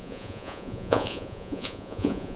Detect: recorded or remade remade